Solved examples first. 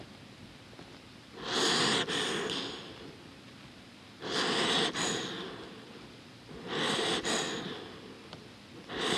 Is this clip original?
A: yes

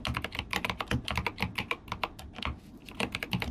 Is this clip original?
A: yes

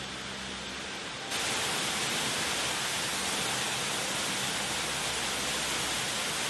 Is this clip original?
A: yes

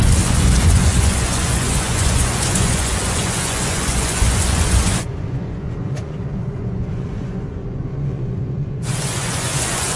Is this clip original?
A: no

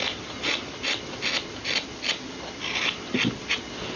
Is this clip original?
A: yes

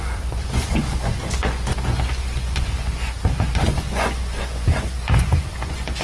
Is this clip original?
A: no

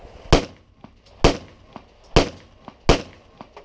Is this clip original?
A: yes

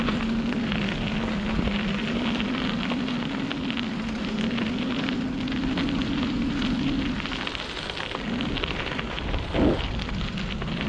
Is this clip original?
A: yes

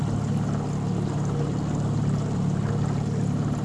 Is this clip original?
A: yes